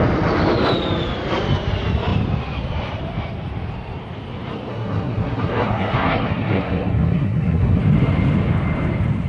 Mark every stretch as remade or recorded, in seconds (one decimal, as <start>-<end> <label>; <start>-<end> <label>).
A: 0.0-4.7 recorded; 4.7-7.8 remade; 7.8-9.3 recorded